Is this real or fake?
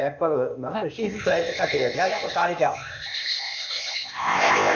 fake